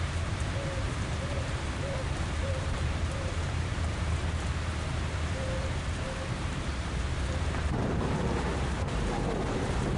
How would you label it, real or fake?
fake